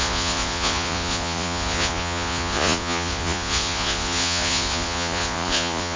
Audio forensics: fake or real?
fake